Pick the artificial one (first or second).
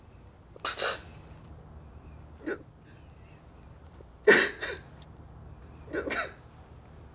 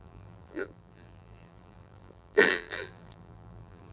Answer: second